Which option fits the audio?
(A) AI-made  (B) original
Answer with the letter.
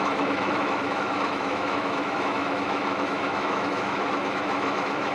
A